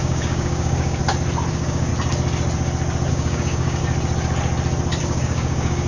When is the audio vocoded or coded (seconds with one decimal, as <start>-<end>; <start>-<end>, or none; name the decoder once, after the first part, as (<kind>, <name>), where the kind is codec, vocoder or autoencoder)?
0.0-1.0 (codec, DAC); 1.5-1.9; 3.1-3.8; 5.0-5.9

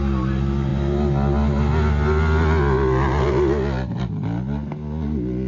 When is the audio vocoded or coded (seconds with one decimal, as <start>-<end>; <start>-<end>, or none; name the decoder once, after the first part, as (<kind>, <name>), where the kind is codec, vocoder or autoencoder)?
none

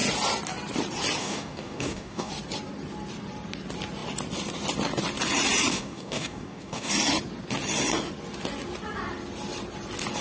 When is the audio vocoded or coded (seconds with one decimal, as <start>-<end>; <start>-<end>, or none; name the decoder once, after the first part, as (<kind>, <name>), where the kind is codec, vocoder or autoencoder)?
1.2-2.3 (codec, DAC); 5.7-6.9